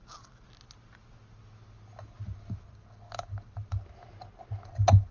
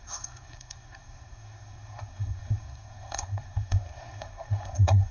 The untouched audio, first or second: first